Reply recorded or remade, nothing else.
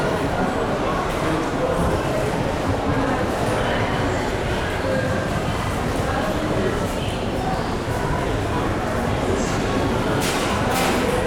recorded